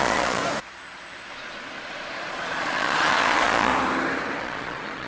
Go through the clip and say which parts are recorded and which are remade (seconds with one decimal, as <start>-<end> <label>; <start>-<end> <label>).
0.0-0.4 remade; 0.4-1.3 recorded; 1.3-3.7 remade; 3.7-4.4 recorded; 4.4-5.1 remade